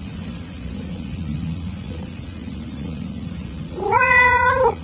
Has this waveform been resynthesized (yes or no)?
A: yes